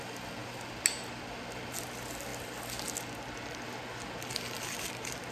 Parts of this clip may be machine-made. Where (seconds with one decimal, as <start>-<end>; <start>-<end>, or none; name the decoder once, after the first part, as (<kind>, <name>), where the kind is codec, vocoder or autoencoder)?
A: none